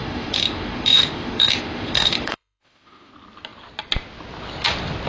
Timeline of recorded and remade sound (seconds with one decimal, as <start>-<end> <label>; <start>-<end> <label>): 0.0-3.1 remade; 3.1-5.1 recorded